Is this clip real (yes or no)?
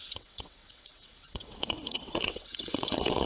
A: no